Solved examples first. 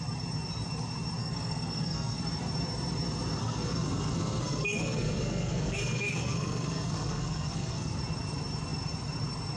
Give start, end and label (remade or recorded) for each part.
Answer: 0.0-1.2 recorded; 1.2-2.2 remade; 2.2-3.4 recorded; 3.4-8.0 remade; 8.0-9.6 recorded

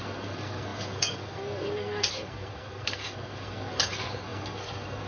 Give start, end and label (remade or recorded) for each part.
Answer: 0.0-5.1 remade